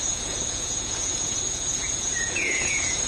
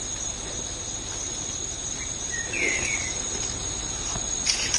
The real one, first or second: second